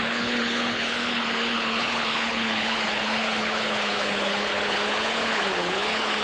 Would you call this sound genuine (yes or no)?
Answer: no